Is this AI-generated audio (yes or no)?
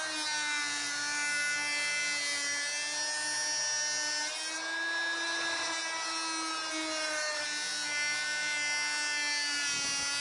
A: no